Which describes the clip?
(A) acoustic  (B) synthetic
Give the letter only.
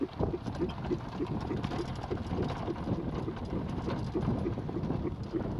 A